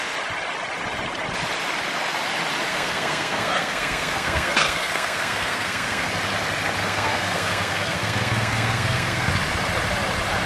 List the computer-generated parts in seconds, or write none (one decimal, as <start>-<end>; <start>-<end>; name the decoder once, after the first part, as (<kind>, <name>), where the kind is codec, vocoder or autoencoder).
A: 2.7-6.1 (codec, SNAC); 6.8-9.3